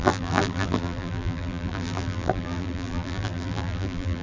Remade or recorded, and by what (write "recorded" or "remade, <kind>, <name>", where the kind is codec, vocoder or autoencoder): remade, vocoder, BigVGAN v2